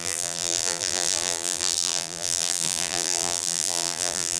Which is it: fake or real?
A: fake